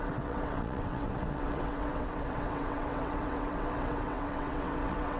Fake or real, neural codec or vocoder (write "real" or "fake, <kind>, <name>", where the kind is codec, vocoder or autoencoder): fake, vocoder, WaveNeXt